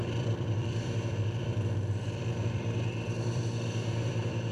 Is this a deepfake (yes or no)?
yes